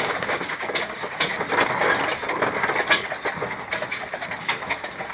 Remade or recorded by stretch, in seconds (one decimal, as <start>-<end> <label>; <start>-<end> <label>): 0.0-1.3 remade; 1.3-4.4 recorded; 4.4-5.1 remade